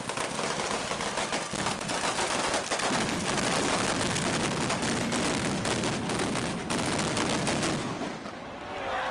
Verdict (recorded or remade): recorded